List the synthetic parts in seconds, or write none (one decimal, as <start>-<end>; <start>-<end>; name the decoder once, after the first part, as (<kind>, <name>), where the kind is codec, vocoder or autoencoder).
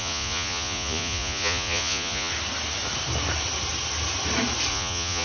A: 0.0-2.3 (vocoder, Vocos); 4.7-5.2